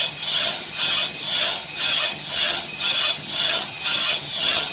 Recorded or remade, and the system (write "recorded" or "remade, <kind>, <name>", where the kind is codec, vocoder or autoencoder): remade, vocoder, HiFi-GAN